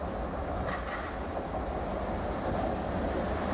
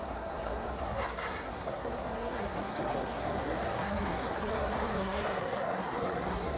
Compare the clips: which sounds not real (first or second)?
second